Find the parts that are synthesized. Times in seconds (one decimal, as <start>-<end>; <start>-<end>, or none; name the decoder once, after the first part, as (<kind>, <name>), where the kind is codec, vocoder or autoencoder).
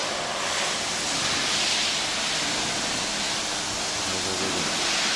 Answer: none